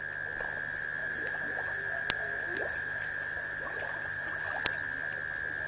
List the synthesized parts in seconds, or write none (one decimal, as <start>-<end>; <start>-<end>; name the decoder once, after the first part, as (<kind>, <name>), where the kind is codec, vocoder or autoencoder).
1.0-4.4 (vocoder, BigVGAN v2)